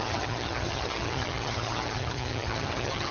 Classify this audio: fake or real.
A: fake